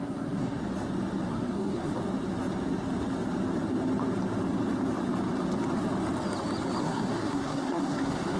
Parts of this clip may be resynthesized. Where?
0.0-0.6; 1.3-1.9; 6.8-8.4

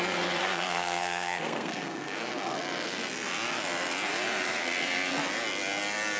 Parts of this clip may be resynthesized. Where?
0.4-2.3